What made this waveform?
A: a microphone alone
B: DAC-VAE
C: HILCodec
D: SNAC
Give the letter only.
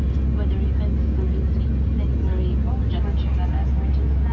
A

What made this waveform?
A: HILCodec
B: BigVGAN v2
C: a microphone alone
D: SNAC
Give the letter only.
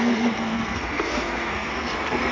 D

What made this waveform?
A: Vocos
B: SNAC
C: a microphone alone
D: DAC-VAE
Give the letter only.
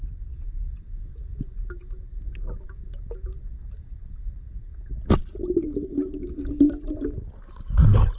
C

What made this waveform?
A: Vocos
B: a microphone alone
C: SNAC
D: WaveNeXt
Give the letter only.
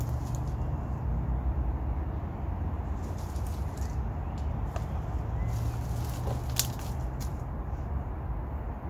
B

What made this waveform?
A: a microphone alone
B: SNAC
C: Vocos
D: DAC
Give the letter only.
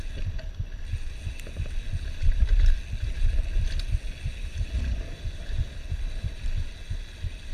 A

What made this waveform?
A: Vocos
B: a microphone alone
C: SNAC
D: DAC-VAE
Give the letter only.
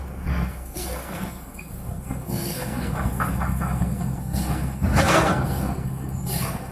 C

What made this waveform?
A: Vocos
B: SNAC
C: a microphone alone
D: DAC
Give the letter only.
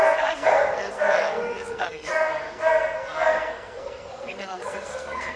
B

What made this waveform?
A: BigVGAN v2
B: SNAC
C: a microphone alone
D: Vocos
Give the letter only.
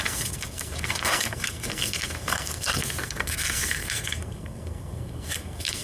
B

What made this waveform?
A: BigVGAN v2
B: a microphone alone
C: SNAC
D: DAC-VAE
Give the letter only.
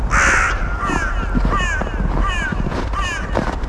B